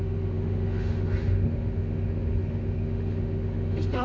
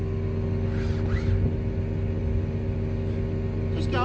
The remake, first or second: first